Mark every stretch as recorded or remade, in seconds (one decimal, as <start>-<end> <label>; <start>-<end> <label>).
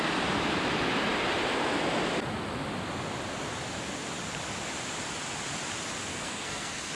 0.0-6.1 recorded; 6.1-6.9 remade